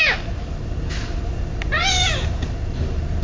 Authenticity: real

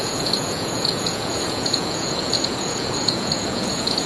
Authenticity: fake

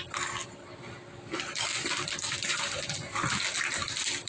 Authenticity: real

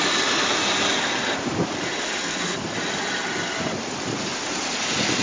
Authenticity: real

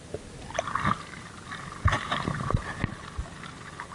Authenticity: real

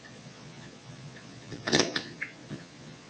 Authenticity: fake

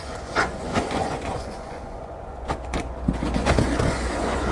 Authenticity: fake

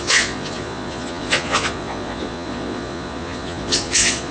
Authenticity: fake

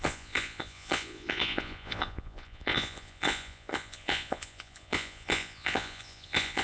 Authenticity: fake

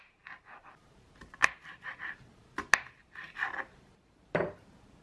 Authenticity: real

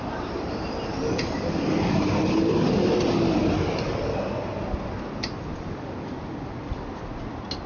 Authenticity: real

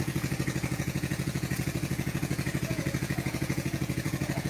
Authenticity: fake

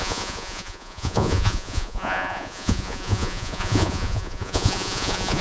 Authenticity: fake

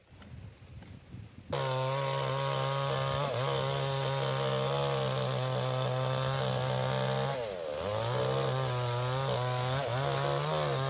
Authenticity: real